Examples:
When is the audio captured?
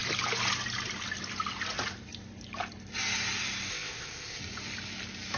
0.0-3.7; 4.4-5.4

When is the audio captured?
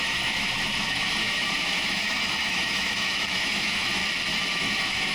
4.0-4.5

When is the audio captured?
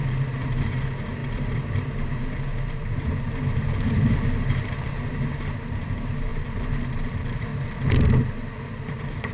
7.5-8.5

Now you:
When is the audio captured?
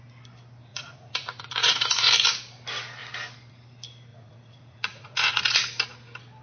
0.0-0.7; 2.1-4.1; 5.4-6.4